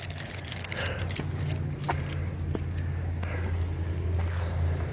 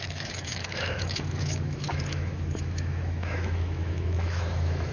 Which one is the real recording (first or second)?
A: first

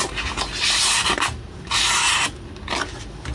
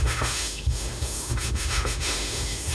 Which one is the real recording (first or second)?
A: first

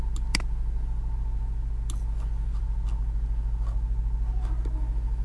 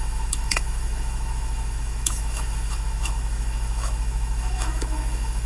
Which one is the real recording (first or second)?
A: first